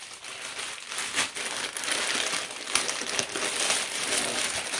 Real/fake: real